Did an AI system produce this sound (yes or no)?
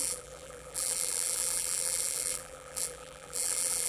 yes